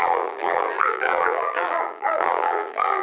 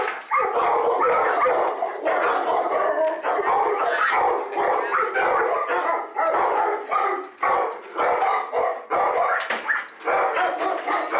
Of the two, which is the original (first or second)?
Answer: second